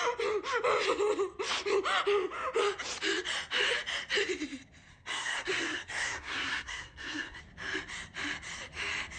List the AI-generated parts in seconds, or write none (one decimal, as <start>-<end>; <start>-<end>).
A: 4.9-7.4